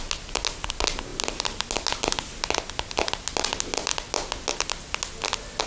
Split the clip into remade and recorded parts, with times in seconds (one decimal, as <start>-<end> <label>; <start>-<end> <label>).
0.0-5.7 recorded